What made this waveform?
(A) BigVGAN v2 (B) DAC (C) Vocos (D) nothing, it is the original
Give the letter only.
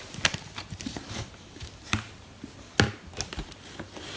D